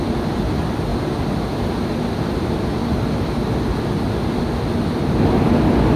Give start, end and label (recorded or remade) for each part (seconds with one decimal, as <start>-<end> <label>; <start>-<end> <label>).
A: 0.0-6.0 recorded